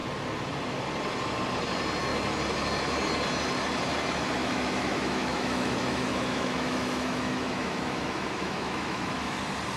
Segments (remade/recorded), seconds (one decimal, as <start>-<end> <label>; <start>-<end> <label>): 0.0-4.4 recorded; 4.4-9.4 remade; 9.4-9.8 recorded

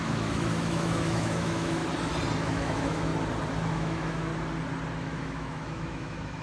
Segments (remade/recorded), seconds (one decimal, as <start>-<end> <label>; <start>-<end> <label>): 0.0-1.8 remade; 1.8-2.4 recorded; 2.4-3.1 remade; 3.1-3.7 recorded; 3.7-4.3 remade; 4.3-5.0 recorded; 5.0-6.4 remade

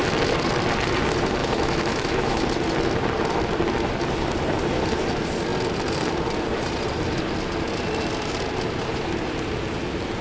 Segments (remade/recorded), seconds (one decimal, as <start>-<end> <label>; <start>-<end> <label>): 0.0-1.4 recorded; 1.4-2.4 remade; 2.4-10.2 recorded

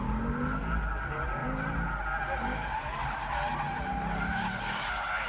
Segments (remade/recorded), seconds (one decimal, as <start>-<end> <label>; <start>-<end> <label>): 0.0-5.3 recorded